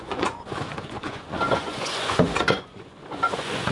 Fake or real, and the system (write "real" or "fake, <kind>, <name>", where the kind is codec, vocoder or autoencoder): fake, vocoder, Vocos